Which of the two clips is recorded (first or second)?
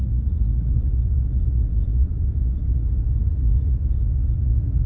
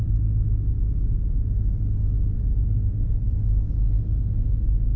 second